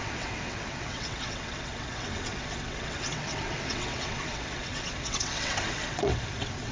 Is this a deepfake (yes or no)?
yes